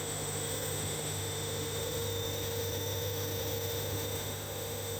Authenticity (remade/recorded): remade